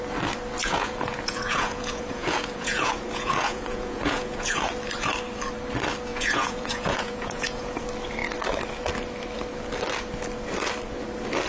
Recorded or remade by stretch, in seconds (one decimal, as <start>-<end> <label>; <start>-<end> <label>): 0.0-0.6 recorded; 0.6-4.7 remade; 4.7-6.1 recorded; 6.1-7.8 remade; 7.8-11.5 recorded